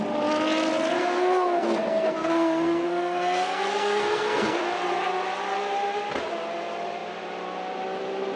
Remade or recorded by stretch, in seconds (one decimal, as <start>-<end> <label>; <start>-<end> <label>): 0.0-1.0 recorded; 1.0-4.6 remade; 4.6-8.4 recorded